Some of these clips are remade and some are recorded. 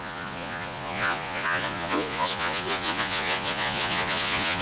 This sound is remade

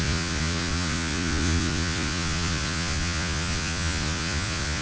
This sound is remade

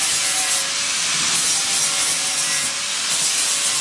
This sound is recorded